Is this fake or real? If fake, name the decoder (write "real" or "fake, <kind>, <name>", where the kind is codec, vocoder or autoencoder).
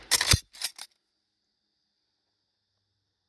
real